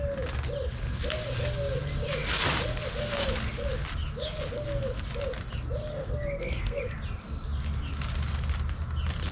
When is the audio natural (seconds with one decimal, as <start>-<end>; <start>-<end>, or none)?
0.0-5.9; 6.8-9.3

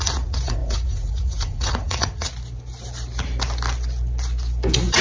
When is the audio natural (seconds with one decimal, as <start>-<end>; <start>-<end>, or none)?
2.3-5.0